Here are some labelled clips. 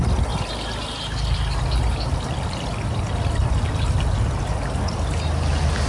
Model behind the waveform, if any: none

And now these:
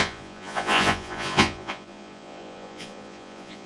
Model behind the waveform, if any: vocoder, Vocos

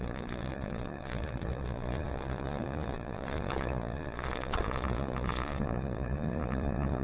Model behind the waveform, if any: vocoder, Vocos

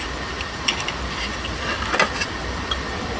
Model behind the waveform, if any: none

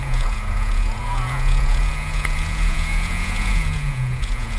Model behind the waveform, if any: vocoder, Vocos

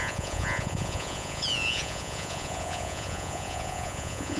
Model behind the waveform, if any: vocoder, Vocos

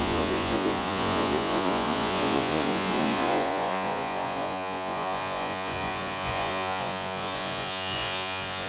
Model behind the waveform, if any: vocoder, Vocos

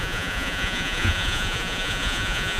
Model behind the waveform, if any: vocoder, Vocos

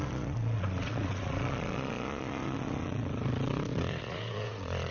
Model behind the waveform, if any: vocoder, Vocos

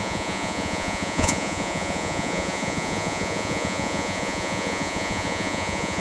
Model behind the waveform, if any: vocoder, Vocos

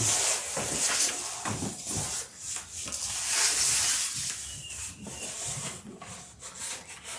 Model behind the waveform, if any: none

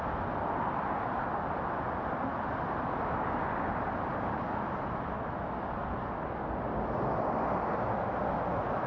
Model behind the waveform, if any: none